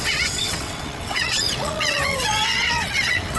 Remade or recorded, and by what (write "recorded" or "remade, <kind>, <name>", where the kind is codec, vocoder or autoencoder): remade, vocoder, WaveNeXt